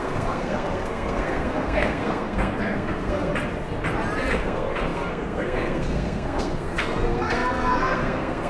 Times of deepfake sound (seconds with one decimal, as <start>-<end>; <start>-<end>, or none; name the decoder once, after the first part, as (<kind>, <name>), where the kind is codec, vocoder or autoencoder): 0.0-3.3 (codec, SNAC); 4.3-8.5